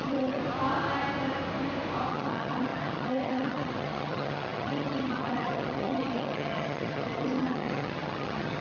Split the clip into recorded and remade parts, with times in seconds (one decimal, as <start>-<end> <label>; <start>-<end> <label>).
0.0-0.4 remade; 0.4-2.1 recorded; 2.1-8.6 remade